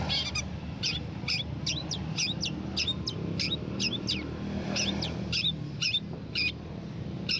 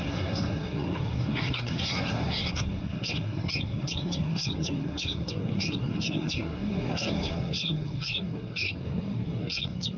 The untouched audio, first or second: first